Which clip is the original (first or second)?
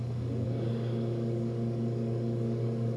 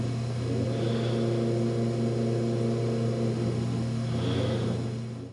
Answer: second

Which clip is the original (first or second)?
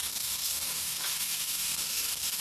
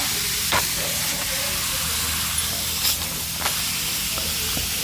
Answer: second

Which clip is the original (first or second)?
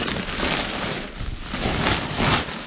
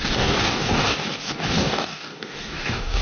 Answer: first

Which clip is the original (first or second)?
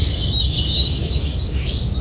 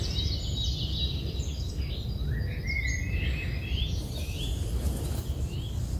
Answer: second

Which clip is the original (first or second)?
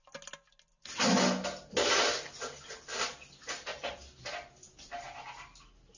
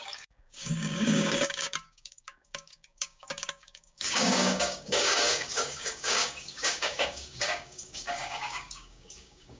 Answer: first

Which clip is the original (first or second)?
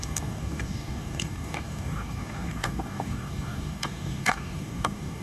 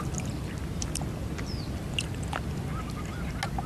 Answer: second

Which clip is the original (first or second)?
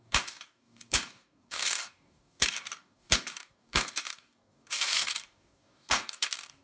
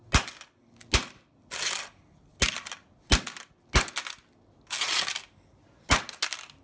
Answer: second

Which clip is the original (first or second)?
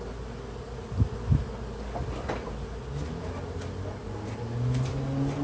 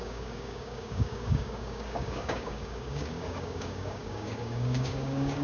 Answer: first